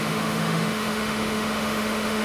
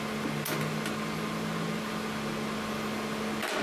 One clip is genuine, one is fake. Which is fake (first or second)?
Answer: first